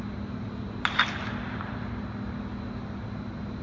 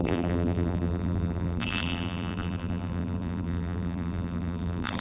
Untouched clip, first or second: first